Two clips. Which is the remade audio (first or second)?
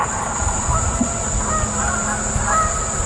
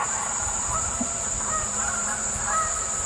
second